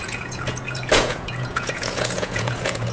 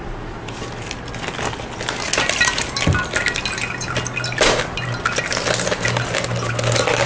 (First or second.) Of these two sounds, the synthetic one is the first